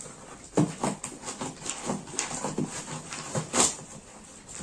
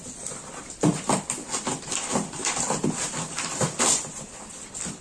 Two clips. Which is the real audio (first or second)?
first